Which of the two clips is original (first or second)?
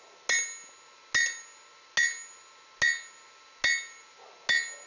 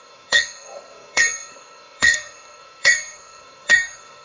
first